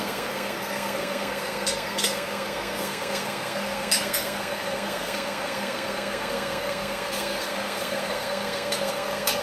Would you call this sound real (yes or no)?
no